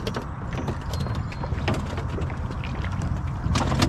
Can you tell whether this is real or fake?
real